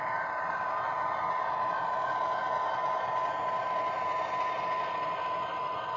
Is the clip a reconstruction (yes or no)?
no